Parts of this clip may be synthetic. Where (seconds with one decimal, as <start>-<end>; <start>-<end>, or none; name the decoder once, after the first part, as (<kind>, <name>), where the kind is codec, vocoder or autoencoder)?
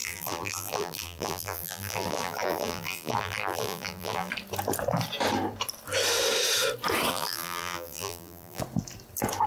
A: 0.0-4.3 (vocoder, BigVGAN v2); 7.1-8.6